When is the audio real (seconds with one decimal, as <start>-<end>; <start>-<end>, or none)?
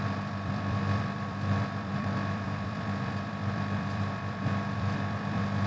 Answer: none